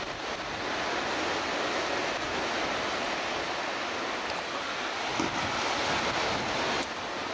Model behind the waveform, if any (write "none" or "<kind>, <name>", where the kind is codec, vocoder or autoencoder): none